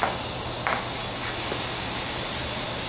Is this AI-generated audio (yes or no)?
no